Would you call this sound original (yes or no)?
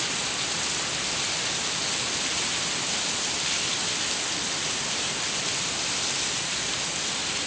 yes